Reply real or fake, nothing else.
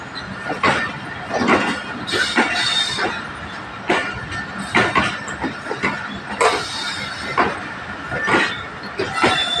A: real